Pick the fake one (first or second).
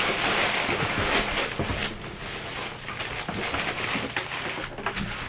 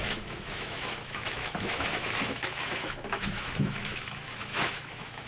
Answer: second